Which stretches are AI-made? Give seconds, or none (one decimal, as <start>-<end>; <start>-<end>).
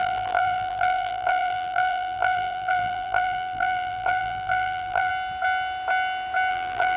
0.0-5.1; 6.5-7.0